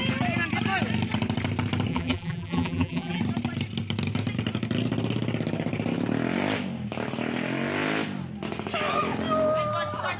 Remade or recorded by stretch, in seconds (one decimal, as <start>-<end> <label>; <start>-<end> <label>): 0.0-1.9 recorded; 1.9-3.2 remade; 3.2-10.2 recorded